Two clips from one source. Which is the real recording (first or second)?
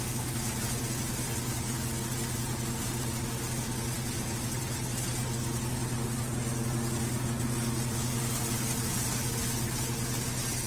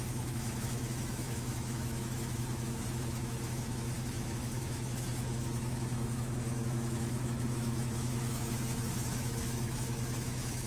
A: first